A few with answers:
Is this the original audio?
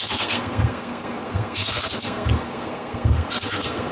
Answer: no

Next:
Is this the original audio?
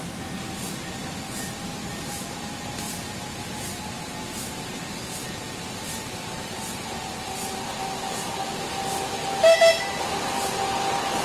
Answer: yes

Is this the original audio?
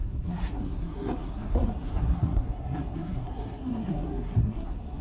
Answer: no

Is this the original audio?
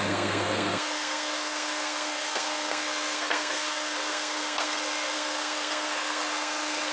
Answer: no